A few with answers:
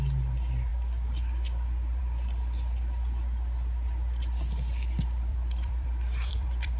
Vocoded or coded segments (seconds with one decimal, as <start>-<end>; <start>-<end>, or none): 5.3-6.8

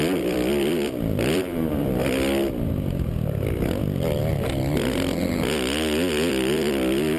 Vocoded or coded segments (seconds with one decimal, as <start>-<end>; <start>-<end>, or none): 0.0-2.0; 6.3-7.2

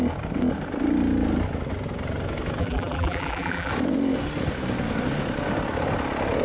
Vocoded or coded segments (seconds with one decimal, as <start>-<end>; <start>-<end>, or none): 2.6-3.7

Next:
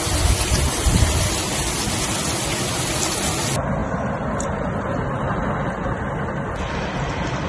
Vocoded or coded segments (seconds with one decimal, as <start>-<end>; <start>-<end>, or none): 0.7-1.5

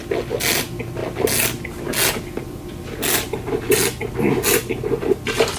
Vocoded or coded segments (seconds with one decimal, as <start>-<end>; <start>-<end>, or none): none

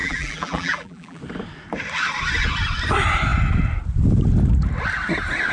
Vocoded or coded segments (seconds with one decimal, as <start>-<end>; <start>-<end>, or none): 0.0-1.2